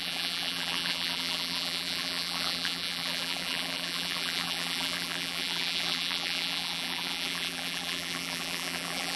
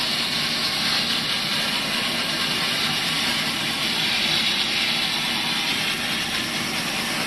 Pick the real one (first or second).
second